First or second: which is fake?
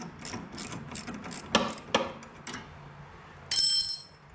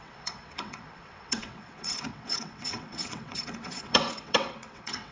second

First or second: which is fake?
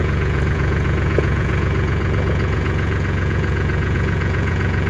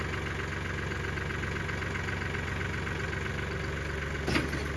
first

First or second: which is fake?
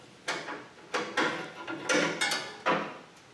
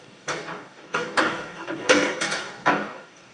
second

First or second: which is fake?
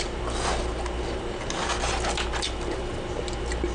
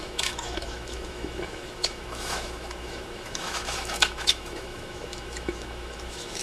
second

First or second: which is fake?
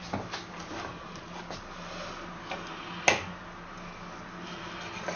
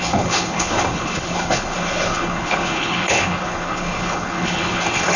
second